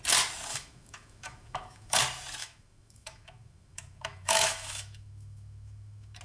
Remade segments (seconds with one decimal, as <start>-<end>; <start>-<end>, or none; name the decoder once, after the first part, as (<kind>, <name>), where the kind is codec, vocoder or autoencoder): 0.5-2.0 (autoencoder, DAC-VAE); 2.4-6.2